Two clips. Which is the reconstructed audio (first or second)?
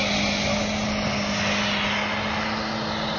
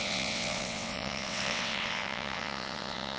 second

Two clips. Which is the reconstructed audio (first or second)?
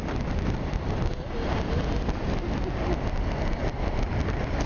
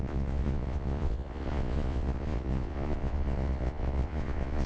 second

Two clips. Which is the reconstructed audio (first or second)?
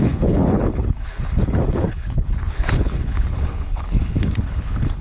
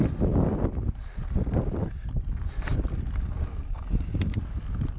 first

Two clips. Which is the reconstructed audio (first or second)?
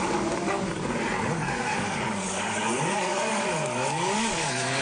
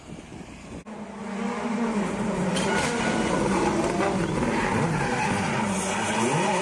first